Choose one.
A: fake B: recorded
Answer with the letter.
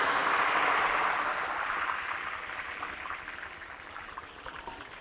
B